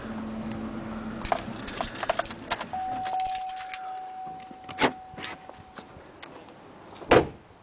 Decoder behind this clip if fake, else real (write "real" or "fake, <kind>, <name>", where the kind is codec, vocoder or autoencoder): real